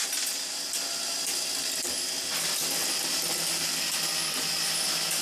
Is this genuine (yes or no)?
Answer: yes